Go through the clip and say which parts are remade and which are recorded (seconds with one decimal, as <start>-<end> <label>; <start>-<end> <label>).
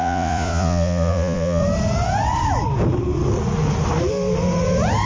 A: 0.0-1.6 remade; 1.6-5.1 recorded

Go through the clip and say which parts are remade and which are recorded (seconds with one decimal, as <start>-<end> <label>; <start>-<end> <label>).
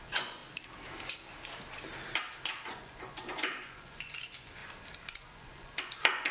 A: 0.0-0.4 remade; 0.4-2.7 recorded; 2.7-4.6 remade; 4.6-5.1 recorded; 5.1-6.3 remade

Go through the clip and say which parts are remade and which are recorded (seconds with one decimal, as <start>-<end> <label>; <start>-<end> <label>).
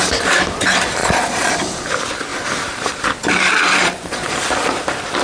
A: 0.0-1.0 recorded; 1.0-1.5 remade; 1.5-3.8 recorded; 3.8-4.3 remade; 4.3-5.2 recorded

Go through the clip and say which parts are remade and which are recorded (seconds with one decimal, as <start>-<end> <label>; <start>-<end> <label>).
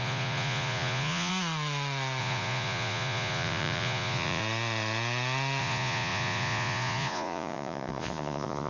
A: 0.0-1.3 remade; 1.3-2.2 recorded; 2.2-4.4 remade; 4.4-5.6 recorded; 5.6-8.7 remade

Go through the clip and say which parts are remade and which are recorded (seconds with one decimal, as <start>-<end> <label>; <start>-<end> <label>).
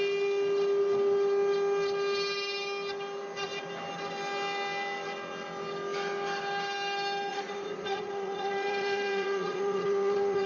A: 0.0-7.3 recorded; 7.3-10.5 remade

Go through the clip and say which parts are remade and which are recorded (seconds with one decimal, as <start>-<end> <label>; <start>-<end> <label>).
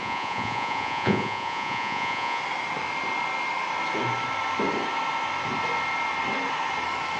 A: 0.0-2.4 remade; 2.4-7.2 recorded